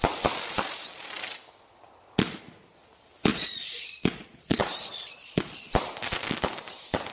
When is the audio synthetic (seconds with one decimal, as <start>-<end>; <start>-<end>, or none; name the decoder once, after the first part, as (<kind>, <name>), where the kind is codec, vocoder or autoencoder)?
3.3-5.7 (vocoder, Vocos)